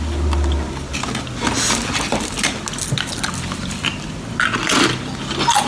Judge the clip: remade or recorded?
recorded